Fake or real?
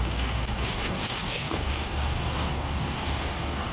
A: fake